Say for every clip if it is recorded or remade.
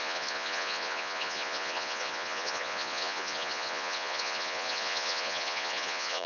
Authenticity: remade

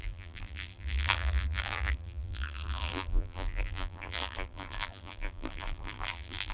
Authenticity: remade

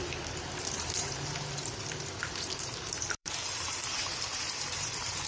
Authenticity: remade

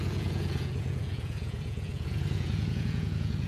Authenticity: remade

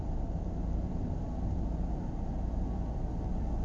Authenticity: recorded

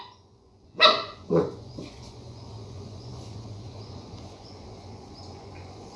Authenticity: remade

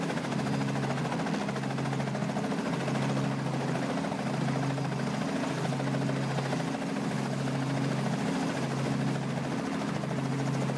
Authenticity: recorded